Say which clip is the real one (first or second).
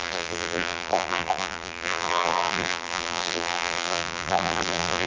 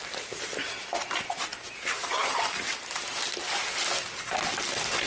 second